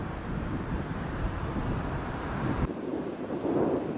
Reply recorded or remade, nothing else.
remade